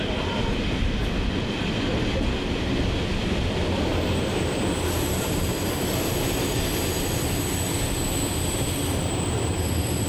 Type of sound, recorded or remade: recorded